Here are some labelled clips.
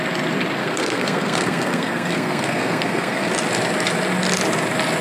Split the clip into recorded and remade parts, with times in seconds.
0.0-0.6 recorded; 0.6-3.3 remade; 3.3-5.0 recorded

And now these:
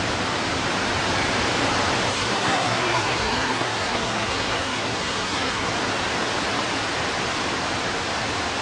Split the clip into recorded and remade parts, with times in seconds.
0.0-2.1 recorded; 2.1-5.7 remade; 5.7-8.6 recorded

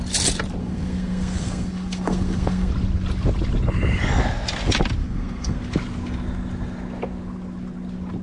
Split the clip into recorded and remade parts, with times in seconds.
0.0-0.6 recorded; 0.6-2.7 remade; 2.7-5.0 recorded; 5.0-5.6 remade; 5.6-8.2 recorded